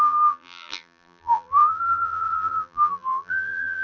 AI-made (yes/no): yes